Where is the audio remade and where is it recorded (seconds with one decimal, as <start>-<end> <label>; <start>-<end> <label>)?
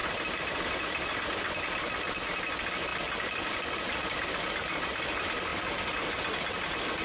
0.0-7.0 recorded